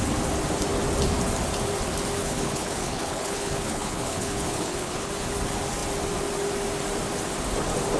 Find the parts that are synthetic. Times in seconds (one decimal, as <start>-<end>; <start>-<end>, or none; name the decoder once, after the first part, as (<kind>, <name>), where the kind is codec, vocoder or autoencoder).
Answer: 2.2-5.1 (codec, HILCodec)